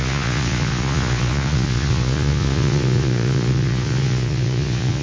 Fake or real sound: fake